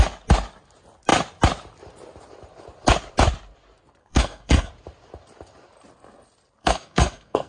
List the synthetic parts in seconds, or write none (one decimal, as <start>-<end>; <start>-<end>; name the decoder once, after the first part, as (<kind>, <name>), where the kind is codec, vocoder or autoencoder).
4.0-4.7 (codec, SNAC); 6.6-7.5